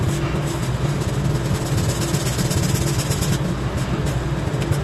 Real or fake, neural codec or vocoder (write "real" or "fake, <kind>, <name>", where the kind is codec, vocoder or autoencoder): real